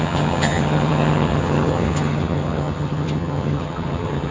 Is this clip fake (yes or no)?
yes